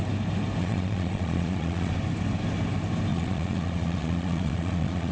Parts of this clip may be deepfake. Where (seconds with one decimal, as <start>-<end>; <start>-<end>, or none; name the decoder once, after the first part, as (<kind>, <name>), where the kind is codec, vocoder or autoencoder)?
0.6-1.9 (vocoder, Vocos); 3.1-5.1